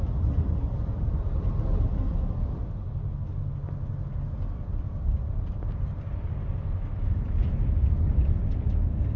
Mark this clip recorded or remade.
recorded